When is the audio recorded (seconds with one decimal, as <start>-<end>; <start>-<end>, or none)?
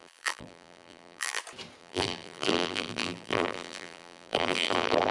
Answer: 1.4-1.8